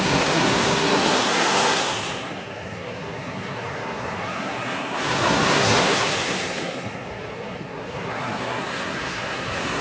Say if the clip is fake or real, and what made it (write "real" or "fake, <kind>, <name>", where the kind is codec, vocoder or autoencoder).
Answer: fake, codec, SNAC